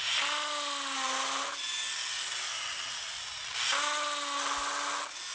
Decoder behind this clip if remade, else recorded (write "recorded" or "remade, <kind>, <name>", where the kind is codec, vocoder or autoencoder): recorded